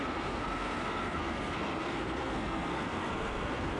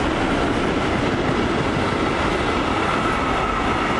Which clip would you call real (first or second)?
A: second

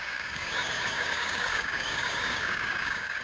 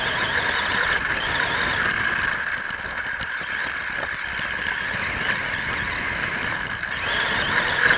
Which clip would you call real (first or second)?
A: second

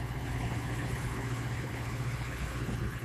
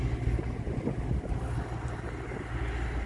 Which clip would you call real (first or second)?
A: second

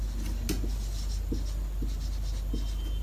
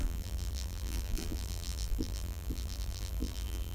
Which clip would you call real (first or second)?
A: first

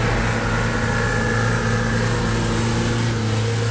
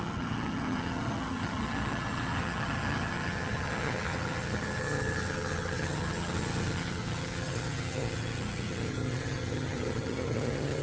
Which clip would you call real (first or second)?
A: first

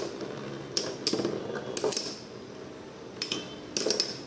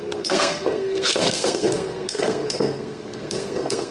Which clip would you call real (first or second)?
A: first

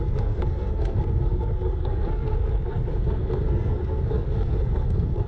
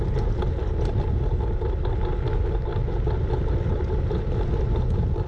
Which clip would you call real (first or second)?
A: second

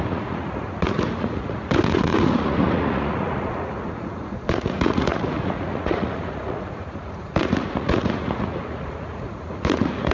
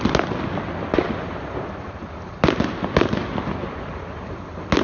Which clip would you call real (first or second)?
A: second